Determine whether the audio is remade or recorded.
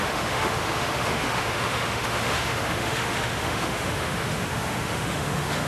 remade